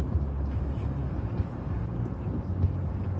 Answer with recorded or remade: recorded